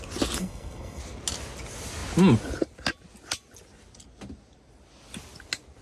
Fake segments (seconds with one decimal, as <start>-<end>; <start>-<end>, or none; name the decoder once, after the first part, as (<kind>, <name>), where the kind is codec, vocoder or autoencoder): 0.4-1.0 (codec, SNAC)